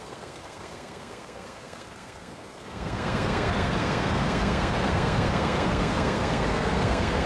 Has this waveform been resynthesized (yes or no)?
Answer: yes